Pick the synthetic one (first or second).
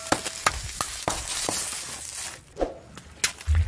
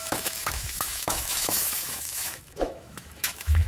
second